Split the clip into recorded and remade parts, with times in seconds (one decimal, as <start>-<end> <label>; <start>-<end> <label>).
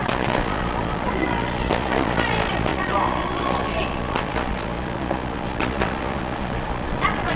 0.0-7.4 remade